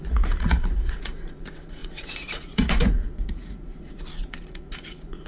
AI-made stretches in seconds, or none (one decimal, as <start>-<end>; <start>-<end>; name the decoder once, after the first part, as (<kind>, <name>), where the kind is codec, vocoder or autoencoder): 0.0-5.3 (vocoder, Vocos)